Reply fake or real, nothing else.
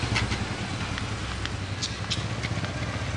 real